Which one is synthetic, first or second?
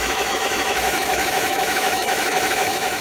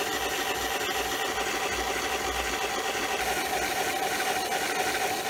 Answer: first